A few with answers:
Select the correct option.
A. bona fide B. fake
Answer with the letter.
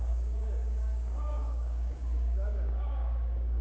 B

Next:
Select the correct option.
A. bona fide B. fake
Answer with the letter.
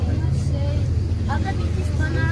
A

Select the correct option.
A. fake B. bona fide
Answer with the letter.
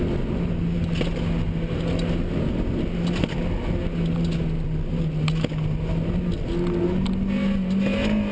B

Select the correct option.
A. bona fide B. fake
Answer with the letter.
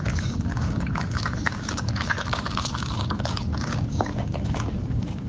B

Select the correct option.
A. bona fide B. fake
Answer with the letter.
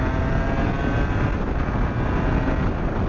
A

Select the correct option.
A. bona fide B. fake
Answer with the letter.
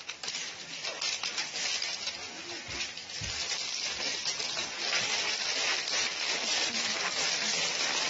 A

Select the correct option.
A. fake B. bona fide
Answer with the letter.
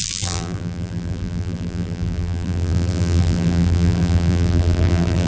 A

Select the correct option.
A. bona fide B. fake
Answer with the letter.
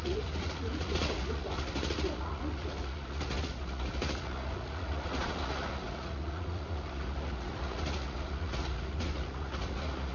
B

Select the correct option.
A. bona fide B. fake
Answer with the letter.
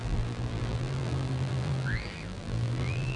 B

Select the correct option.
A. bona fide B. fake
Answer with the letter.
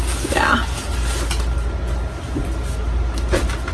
A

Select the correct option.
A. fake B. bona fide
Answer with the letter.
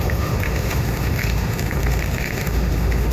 A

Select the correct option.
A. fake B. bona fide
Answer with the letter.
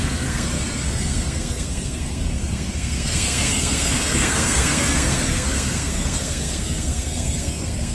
A